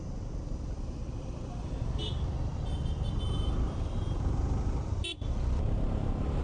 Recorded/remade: recorded